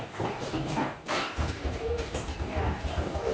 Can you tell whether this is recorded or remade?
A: remade